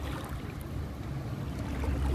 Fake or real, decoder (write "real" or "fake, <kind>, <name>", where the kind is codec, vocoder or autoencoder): real